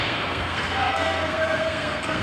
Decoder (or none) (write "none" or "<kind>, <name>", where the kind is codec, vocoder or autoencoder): codec, SNAC